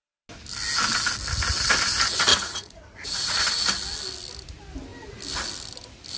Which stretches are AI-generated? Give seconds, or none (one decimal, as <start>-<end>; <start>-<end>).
2.3-3.4